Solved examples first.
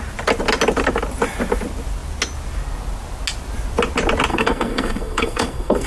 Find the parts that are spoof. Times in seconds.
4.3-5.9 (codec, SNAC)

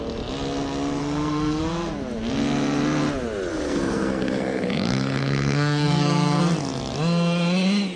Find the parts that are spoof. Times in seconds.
1.0-1.6 (codec, SNAC); 3.5-6.4

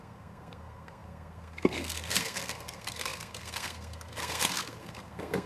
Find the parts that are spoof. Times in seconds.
0.0-5.5 (codec, SNAC)

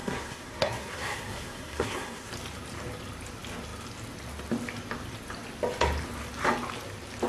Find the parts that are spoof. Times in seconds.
0.0-2.3 (codec, SNAC)

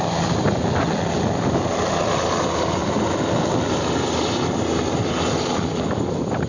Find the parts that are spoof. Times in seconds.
none

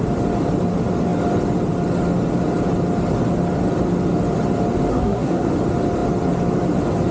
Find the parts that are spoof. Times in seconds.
4.9-5.5 (codec, SNAC)